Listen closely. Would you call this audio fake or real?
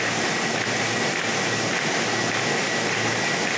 real